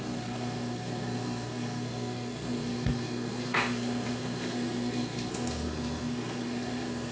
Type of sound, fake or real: fake